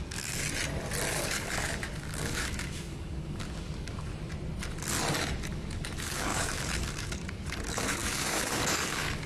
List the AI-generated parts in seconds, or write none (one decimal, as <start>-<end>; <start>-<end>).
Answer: 0.0-0.4; 1.1-4.1; 5.4-9.3